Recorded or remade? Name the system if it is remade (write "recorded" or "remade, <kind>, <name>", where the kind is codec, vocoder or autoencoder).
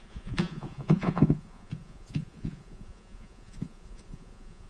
remade, vocoder, Vocos